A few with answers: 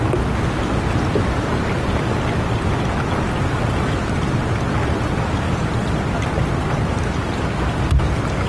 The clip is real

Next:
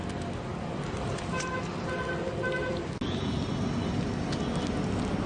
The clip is real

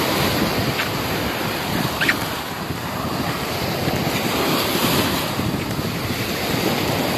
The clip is real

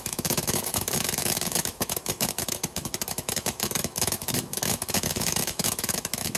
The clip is fake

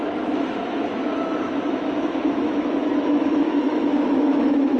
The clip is fake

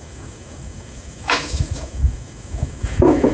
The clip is fake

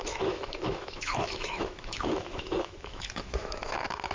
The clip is fake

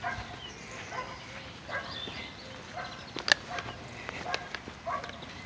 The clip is real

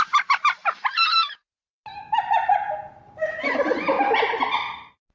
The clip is real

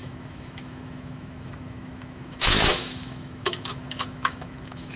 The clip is fake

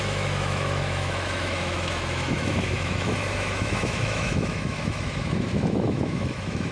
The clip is fake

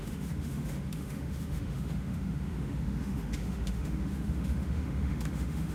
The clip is fake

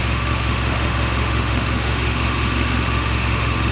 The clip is fake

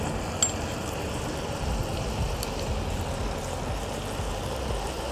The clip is real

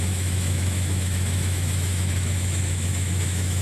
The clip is fake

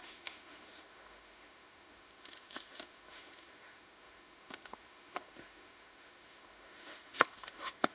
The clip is fake